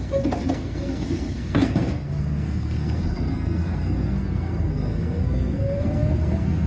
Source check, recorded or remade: remade